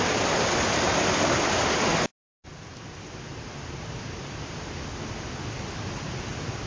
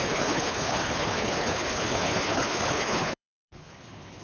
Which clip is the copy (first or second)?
second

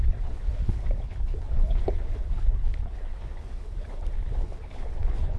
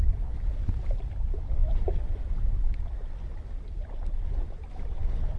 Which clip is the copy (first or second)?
first